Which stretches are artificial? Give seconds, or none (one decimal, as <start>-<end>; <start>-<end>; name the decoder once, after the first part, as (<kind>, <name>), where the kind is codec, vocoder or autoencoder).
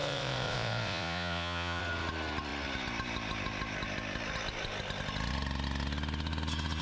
0.0-1.8 (vocoder, Vocos)